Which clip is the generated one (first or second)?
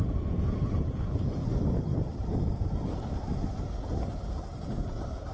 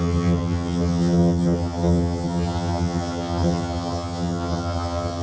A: second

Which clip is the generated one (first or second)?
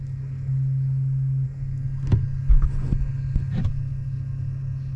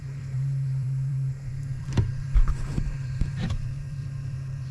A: second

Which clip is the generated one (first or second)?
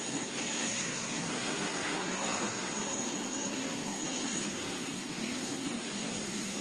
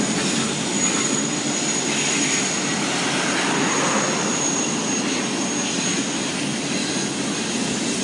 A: first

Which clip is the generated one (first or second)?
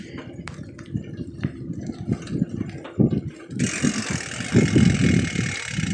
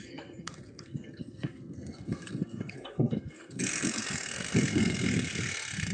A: second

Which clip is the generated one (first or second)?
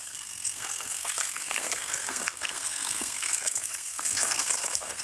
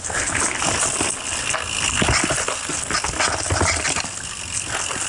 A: first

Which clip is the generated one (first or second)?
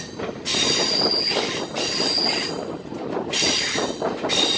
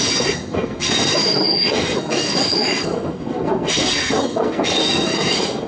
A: second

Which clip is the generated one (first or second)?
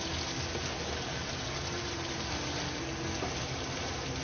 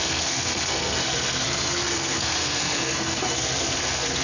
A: second